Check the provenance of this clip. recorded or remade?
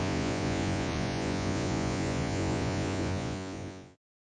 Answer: remade